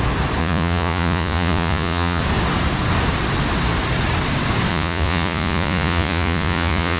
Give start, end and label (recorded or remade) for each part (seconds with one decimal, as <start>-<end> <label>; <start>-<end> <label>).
0.0-0.4 recorded; 0.4-2.2 remade; 2.2-4.7 recorded; 4.7-7.0 remade